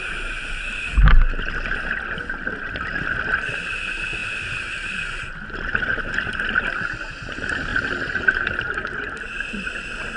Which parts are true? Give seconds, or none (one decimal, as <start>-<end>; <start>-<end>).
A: 0.0-10.2